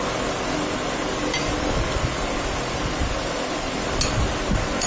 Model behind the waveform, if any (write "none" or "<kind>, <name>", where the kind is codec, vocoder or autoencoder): none